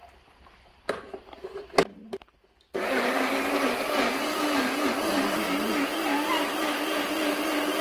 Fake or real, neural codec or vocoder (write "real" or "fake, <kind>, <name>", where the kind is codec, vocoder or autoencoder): real